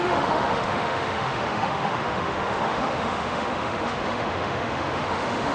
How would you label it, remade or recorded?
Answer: remade